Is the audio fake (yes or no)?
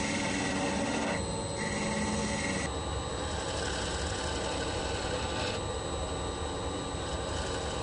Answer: no